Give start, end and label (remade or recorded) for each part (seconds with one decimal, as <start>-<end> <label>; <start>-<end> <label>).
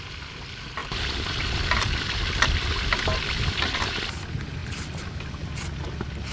0.0-0.8 recorded; 0.8-3.5 remade; 3.5-4.6 recorded; 4.6-5.5 remade; 5.5-6.3 recorded